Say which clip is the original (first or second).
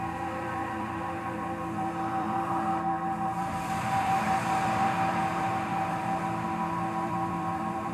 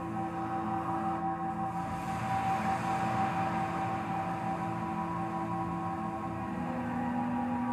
second